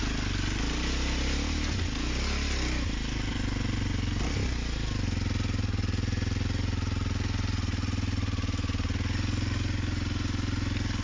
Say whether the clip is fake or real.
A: real